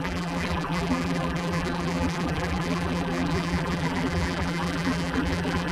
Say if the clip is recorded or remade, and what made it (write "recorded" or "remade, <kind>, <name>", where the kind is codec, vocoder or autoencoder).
remade, vocoder, BigVGAN v2